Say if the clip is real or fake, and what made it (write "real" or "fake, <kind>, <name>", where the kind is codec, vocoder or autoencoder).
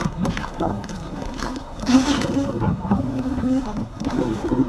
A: fake, codec, SNAC